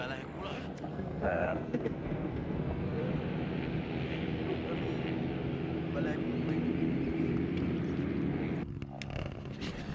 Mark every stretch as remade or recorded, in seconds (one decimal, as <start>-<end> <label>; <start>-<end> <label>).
0.0-0.9 recorded; 0.9-3.0 remade; 3.0-9.9 recorded